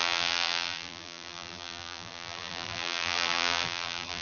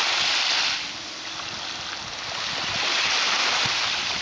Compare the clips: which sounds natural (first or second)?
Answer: second